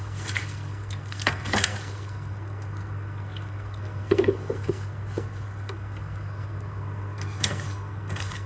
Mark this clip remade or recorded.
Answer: remade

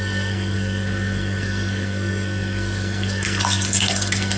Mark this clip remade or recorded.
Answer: remade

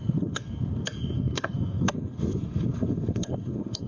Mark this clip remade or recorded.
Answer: remade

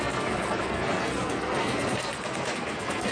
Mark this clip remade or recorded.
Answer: remade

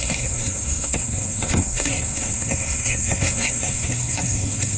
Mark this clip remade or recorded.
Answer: remade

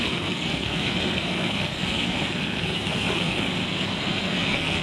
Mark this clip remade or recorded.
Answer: remade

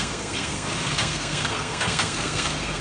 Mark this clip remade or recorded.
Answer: remade